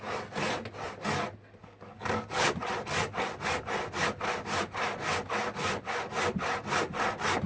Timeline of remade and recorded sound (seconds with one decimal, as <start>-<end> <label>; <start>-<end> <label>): 0.0-1.6 recorded; 1.6-2.5 remade; 2.5-7.5 recorded